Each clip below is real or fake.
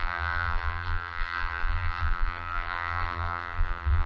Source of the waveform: fake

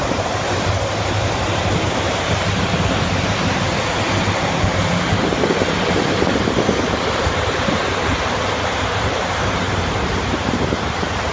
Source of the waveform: fake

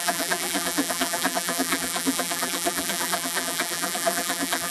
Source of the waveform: fake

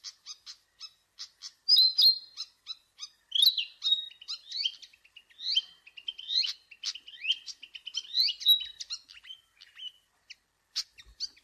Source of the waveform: real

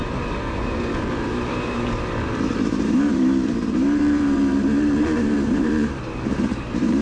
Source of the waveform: fake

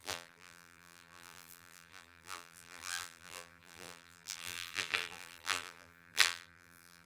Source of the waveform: fake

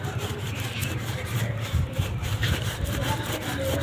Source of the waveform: fake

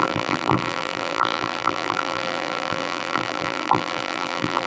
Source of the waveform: fake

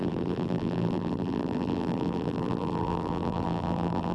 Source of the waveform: fake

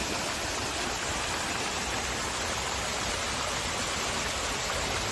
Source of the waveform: real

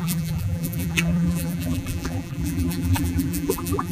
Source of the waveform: fake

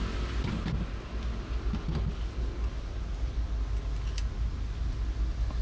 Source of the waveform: real